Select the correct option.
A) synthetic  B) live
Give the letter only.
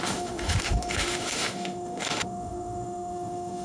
A